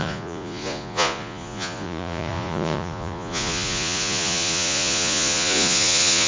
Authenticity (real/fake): fake